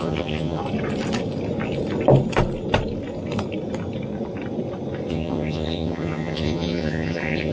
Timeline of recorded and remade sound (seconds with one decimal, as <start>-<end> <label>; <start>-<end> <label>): 0.0-0.6 remade; 0.6-5.1 recorded; 5.1-7.5 remade